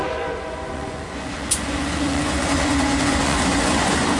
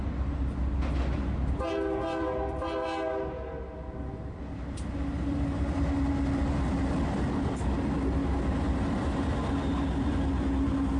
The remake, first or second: first